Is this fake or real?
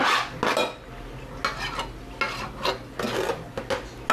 real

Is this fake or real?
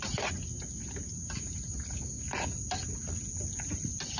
real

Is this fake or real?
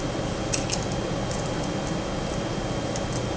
real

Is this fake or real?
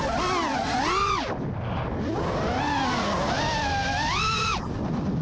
real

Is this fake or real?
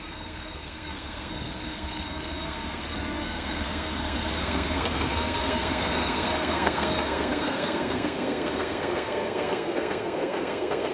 fake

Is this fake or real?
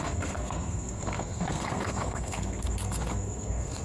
fake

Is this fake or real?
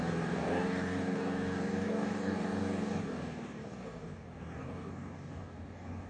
fake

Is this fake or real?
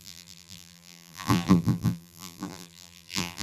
fake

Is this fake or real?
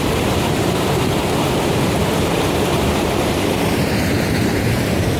fake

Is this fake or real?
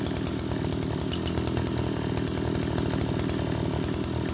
real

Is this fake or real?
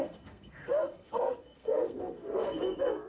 fake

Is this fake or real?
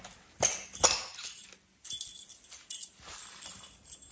real